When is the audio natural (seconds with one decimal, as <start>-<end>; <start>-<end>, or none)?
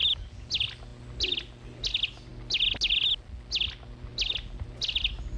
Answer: 0.0-5.4